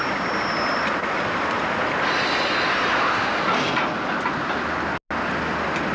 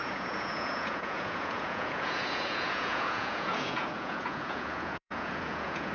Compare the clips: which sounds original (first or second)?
first